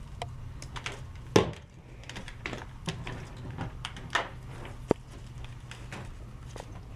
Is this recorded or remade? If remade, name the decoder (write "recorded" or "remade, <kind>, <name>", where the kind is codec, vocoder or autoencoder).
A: recorded